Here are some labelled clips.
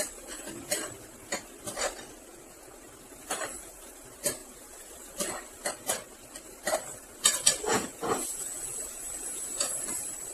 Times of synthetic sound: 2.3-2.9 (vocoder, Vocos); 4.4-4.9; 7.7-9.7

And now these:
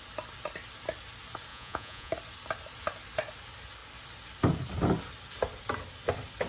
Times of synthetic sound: 1.5-2.1 (vocoder, Vocos)

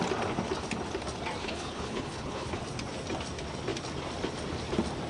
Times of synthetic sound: 1.4-2.6 (codec, HILCodec)

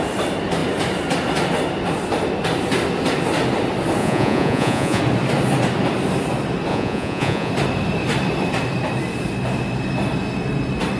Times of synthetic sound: 4.0-5.0 (vocoder, Vocos); 6.7-7.5

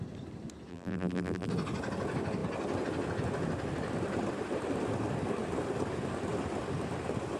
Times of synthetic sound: 0.7-1.5 (vocoder, BigVGAN v2)